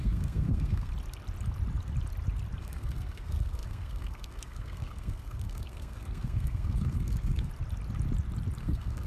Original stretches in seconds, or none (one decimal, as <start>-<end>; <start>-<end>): 0.9-2.6; 7.5-8.6